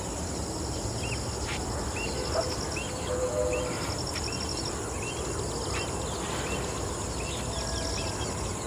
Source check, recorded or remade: recorded